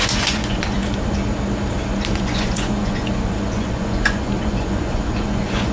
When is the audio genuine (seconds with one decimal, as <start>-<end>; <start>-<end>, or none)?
0.8-2.1